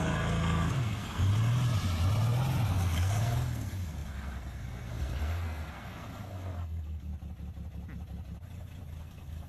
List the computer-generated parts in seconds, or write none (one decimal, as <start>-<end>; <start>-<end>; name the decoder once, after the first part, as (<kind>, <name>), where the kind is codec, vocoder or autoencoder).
0.0-1.3 (codec, SNAC); 2.7-7.1; 9.0-9.5